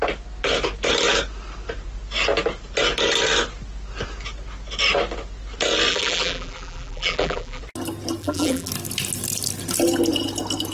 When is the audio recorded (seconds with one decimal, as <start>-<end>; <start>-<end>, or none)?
0.0-5.9; 7.6-8.2; 8.7-10.7